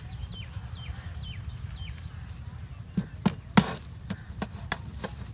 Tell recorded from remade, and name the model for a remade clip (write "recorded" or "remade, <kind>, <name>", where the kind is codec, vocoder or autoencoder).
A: recorded